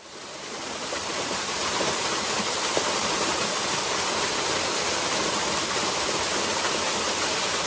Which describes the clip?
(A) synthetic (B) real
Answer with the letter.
B